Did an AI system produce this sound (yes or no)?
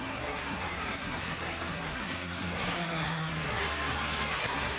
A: yes